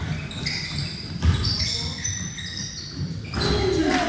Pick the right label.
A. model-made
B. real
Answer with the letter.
B